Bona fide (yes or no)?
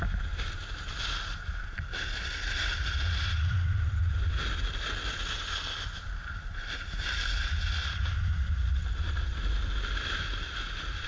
yes